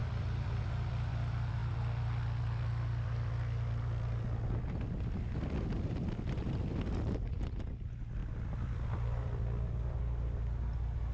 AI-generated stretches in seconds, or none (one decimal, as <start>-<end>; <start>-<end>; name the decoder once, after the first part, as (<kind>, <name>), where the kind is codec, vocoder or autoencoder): 0.0-0.6 (vocoder, BigVGAN v2); 8.2-10.0